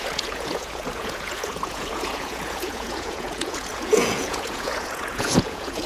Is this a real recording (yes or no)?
no